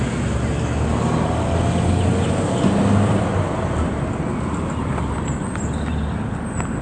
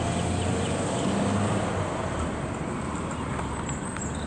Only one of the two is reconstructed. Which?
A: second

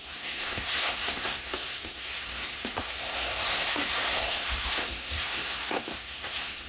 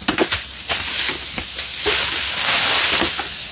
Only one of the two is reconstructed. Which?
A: first